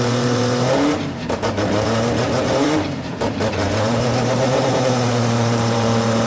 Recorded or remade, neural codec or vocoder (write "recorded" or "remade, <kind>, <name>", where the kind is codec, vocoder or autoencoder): remade, vocoder, BigVGAN v2